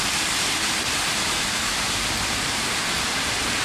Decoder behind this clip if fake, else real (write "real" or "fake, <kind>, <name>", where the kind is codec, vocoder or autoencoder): fake, vocoder, BigVGAN v2